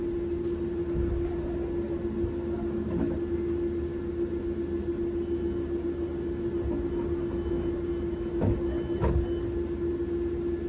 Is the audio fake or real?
real